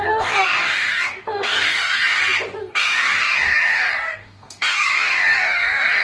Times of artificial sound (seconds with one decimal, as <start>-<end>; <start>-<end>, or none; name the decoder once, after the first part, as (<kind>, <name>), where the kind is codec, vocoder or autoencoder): 0.0-2.2 (codec, DAC); 2.7-6.0